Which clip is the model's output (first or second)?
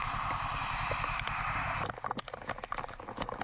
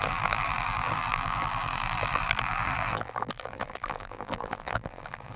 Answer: second